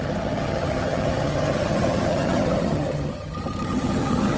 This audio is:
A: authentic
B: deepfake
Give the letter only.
B